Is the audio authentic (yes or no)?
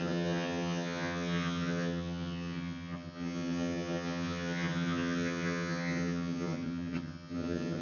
no